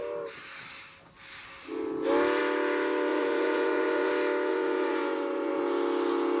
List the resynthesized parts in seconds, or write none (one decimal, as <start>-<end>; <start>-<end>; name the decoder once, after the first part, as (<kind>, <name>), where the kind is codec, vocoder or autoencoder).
3.1-4.1 (vocoder, Vocos); 4.5-5.6